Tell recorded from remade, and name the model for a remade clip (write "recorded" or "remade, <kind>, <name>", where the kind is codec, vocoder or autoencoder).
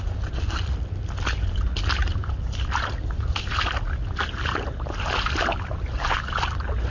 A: recorded